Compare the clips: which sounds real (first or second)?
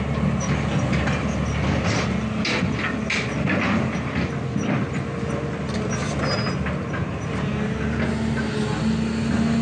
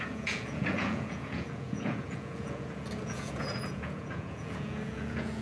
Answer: first